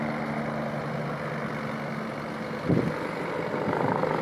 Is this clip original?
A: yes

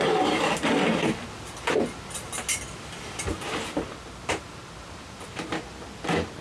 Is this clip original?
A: yes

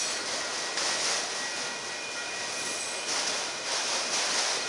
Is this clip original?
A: no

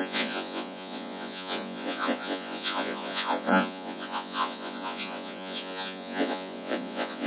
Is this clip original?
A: no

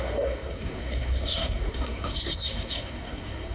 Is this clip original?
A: no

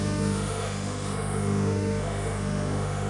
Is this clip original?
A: no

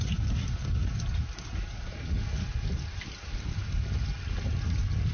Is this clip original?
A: yes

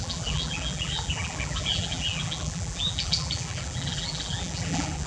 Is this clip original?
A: no